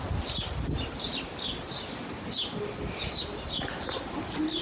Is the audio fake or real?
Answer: real